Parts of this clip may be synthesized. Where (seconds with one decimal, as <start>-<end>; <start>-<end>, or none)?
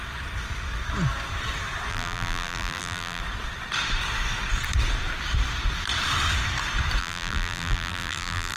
1.9-3.2; 7.0-8.6